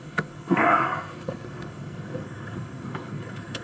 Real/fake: fake